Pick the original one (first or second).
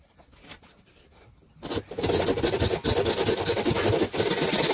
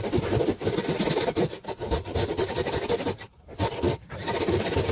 first